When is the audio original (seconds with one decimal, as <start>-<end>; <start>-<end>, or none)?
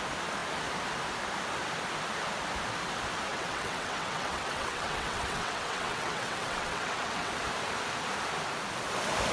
0.0-3.3; 7.3-9.3